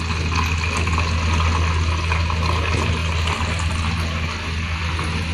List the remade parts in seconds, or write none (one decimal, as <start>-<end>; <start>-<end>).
none